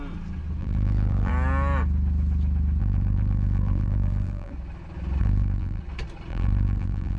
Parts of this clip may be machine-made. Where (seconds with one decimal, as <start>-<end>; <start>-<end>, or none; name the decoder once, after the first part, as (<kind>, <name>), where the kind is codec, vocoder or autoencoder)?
0.6-1.3 (vocoder, BigVGAN v2); 2.8-4.5; 5.2-5.8; 6.3-7.2